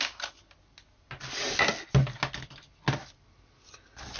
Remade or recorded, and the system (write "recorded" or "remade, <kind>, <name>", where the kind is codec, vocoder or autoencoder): recorded